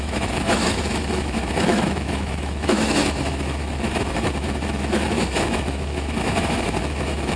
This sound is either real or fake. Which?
fake